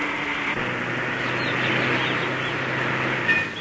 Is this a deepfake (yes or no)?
no